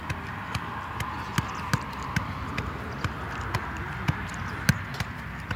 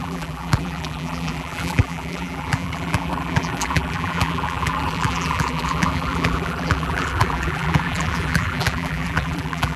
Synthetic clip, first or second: second